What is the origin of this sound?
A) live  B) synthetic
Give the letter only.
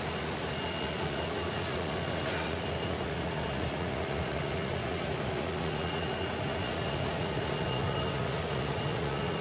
B